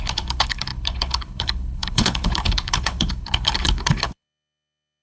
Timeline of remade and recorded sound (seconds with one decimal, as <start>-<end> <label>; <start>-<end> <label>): 0.0-5.0 remade